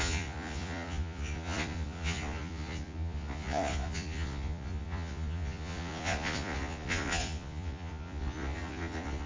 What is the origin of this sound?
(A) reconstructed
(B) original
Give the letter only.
A